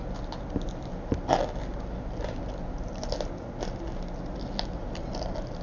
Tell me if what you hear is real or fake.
real